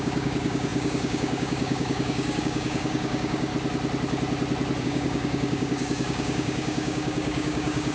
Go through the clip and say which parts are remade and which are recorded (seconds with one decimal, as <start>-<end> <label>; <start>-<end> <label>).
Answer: 0.0-3.5 remade; 3.5-4.8 recorded; 4.8-7.9 remade